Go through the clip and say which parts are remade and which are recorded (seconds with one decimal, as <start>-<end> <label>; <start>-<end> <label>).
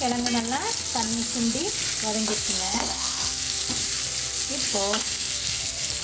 0.0-2.5 recorded; 2.5-3.6 remade; 3.6-4.7 recorded; 4.7-6.0 remade